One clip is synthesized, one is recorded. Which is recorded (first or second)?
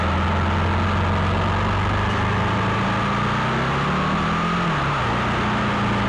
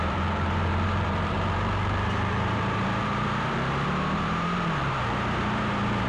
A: first